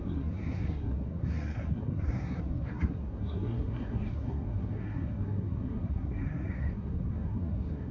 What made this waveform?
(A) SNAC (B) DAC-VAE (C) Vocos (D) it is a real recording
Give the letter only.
A